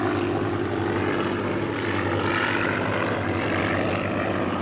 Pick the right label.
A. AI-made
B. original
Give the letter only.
B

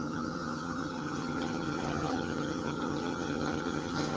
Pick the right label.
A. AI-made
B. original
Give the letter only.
A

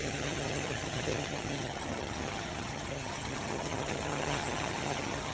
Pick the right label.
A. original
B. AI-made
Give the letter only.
B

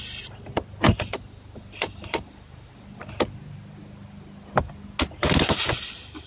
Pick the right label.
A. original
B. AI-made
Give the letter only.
A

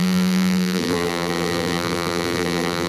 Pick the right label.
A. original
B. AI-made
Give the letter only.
B